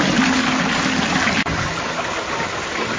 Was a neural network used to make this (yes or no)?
no